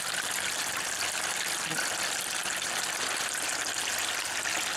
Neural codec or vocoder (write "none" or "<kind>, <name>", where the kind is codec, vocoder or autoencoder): none